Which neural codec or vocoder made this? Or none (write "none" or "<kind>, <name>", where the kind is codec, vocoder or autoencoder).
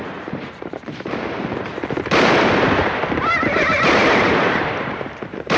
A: vocoder, BigVGAN v2